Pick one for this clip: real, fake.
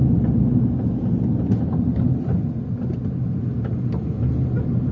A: real